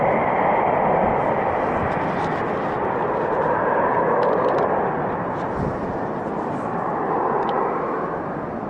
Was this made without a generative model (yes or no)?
yes